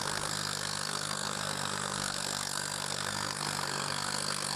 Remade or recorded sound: remade